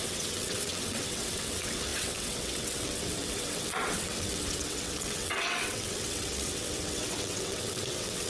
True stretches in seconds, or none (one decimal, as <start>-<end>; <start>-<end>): none